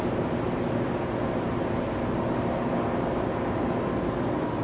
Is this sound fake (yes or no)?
no